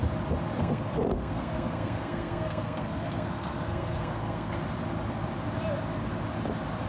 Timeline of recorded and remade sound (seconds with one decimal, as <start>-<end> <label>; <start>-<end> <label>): 0.0-0.6 recorded; 0.6-4.5 remade; 4.5-6.9 recorded